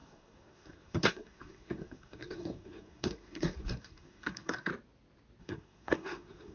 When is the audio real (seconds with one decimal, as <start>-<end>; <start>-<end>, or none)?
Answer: 4.7-5.4